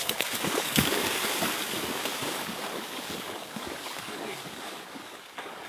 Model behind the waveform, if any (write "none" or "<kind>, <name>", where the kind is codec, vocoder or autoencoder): codec, DAC